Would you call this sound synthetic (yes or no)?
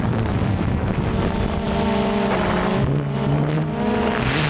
no